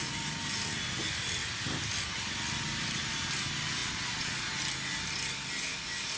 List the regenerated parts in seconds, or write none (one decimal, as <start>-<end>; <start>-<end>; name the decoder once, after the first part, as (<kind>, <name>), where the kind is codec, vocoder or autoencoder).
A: 3.8-4.5 (vocoder, Vocos)

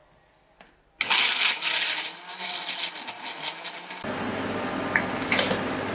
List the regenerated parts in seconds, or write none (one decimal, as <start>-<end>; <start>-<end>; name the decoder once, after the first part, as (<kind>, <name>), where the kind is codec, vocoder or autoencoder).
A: none

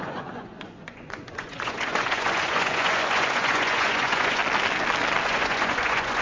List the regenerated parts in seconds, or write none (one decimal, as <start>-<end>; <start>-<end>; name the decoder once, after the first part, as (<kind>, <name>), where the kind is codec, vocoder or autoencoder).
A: 0.0-4.4 (vocoder, Vocos); 5.2-6.2